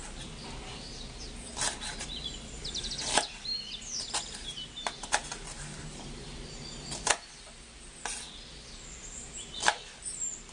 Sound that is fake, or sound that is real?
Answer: real